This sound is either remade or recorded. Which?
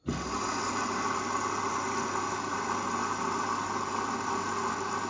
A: recorded